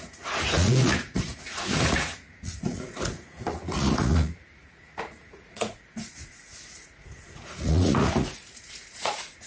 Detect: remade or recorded remade